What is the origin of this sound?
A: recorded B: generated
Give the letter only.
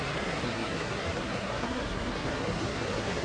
B